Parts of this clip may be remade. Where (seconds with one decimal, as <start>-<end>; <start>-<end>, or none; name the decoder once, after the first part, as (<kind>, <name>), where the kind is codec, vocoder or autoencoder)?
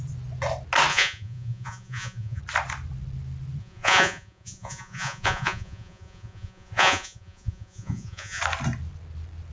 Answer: 0.9-2.4 (vocoder, Vocos); 3.6-8.4